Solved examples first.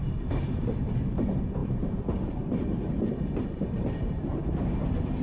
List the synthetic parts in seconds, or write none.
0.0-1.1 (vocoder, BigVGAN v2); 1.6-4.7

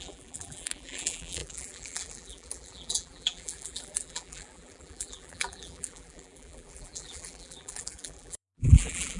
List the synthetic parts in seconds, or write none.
0.0-9.2 (vocoder, BigVGAN v2)

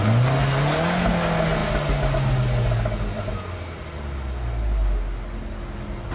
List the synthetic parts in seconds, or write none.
none